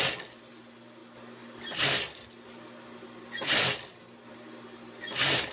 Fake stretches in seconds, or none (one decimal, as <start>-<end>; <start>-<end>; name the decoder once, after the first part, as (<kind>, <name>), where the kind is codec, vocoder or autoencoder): none